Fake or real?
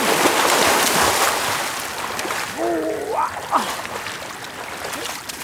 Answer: real